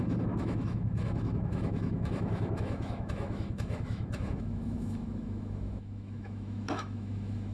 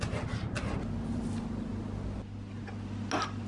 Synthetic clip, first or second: first